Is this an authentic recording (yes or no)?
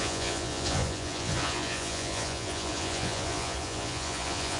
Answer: no